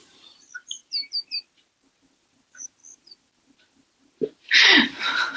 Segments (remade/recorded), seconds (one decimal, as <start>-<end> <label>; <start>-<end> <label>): 0.0-5.4 recorded